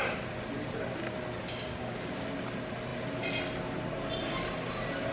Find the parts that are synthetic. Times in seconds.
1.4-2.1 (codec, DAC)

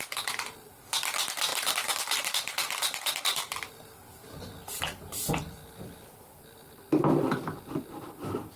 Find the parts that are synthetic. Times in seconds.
0.0-8.6 (vocoder, BigVGAN v2)

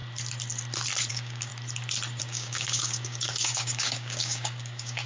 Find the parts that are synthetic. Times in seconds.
1.1-1.5 (codec, DAC); 2.2-5.1

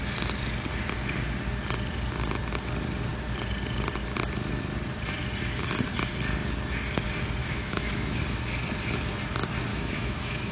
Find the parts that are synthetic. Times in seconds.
7.4-8.2 (autoencoder, DAC-VAE); 9.7-10.5

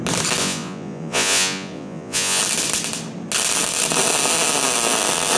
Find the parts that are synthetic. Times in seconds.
0.4-2.4 (vocoder, Vocos)

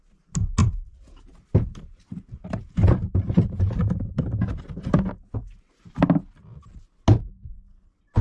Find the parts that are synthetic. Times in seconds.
0.6-4.2 (vocoder, BigVGAN v2)